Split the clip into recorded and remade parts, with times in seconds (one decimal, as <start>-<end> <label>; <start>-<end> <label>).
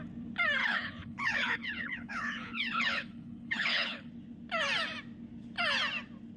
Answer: 0.0-0.6 recorded; 0.6-4.1 remade; 4.1-6.4 recorded